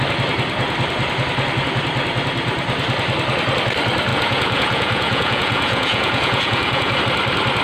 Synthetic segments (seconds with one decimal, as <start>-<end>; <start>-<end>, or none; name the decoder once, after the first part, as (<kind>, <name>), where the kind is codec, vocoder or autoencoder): 4.1-7.0 (vocoder, Vocos)